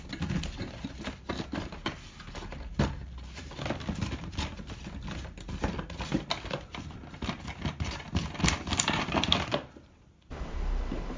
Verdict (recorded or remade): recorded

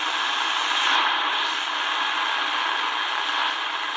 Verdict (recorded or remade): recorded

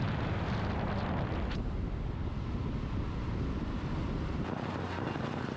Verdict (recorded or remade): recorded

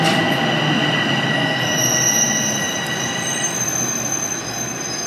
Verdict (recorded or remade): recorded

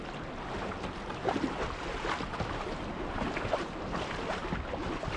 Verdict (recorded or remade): recorded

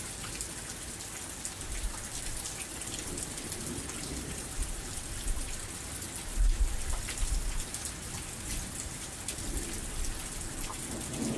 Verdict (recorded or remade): recorded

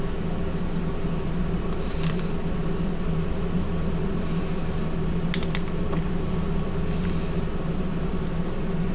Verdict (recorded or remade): recorded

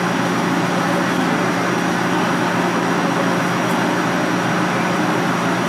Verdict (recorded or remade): recorded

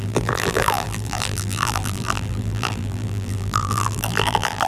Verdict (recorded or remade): remade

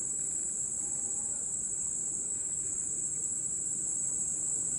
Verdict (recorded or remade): remade